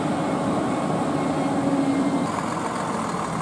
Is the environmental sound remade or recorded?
recorded